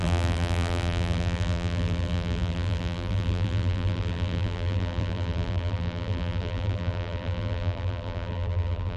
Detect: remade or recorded remade